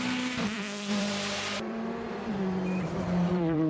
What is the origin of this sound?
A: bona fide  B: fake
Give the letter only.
B